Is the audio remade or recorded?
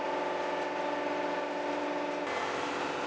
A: recorded